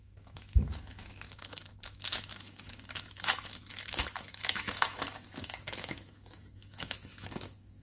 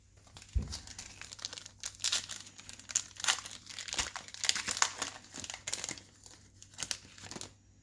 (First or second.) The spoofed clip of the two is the first